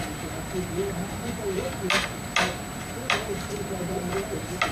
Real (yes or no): yes